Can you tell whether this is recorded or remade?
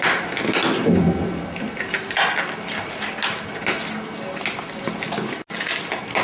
recorded